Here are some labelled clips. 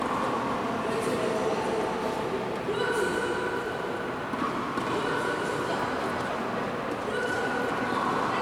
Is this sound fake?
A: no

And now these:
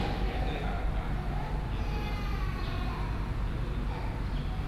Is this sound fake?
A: no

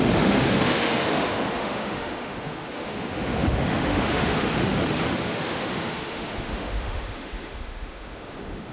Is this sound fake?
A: yes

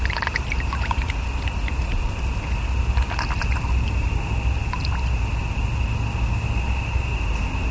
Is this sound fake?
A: no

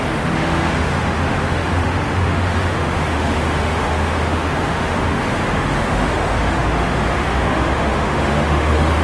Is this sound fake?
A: yes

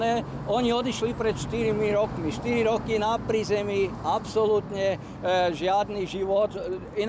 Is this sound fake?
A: no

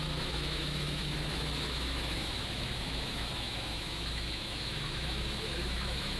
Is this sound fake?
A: yes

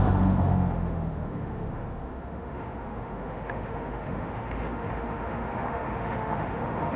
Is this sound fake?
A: yes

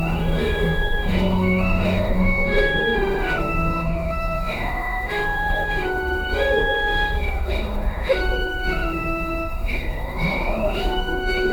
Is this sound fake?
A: yes